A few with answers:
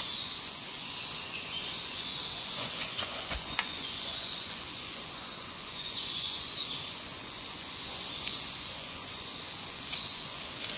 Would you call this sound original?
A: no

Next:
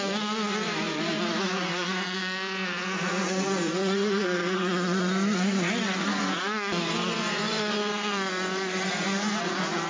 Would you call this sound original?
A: no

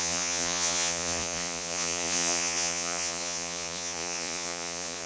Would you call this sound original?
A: no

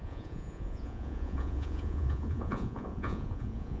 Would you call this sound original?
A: no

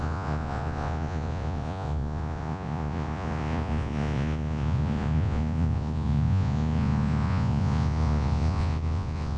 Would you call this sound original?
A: no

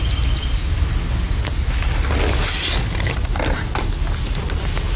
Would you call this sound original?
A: yes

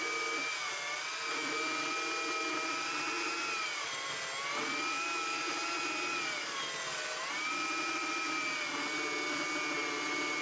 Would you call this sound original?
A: yes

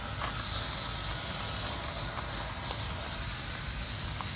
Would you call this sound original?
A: yes